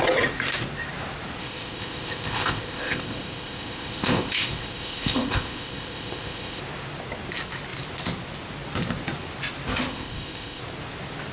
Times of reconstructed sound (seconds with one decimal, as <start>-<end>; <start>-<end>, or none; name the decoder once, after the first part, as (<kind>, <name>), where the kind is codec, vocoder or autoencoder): 1.4-6.6 (codec, ZipCodec); 9.9-10.6